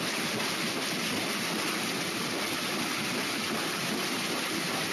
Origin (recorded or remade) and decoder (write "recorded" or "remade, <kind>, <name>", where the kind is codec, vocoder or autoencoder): recorded